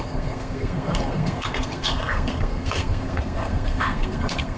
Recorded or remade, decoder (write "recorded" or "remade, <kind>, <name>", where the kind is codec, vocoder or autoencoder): remade, codec, SNAC